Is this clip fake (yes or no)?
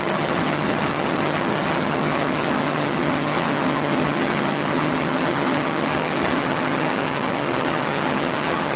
yes